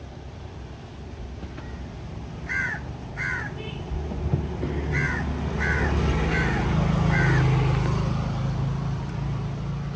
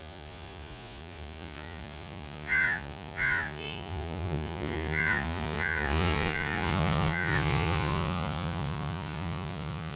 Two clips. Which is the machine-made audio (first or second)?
second